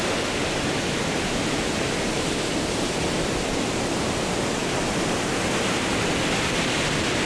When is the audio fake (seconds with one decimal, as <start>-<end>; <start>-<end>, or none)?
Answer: none